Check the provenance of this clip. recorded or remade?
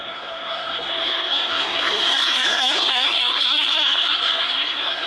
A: remade